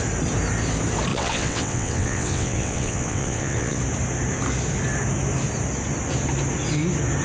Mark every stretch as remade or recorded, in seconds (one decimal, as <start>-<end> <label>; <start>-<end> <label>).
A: 0.0-1.1 recorded; 1.1-3.8 remade; 3.8-7.2 recorded